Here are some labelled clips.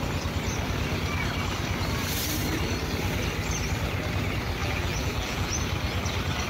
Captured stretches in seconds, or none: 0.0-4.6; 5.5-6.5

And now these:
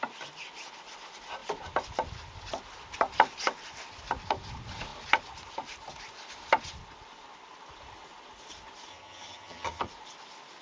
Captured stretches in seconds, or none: 0.0-8.9; 9.9-10.6

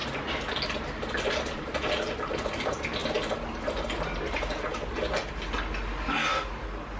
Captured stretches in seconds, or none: 0.0-7.0